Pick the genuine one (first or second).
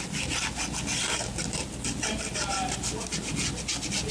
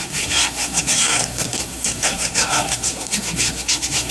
first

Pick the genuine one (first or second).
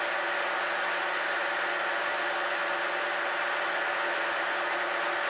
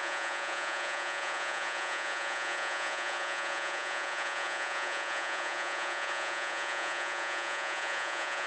first